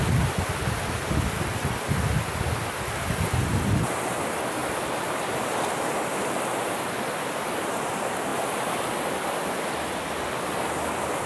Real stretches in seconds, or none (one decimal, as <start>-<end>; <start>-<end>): 0.0-4.6; 5.6-11.3

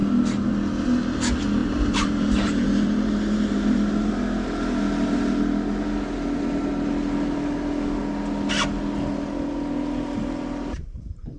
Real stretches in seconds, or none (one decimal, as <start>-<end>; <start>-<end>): 0.0-1.6; 4.1-11.4

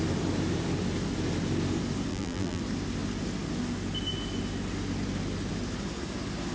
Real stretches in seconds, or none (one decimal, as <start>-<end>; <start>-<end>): 0.0-2.1; 2.6-6.5